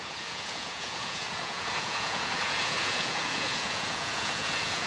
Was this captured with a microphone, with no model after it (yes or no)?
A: no